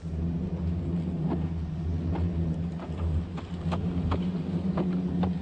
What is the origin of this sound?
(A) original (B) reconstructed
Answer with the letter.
A